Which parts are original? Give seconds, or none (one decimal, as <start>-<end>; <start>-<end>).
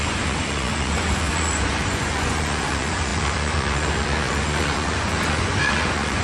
none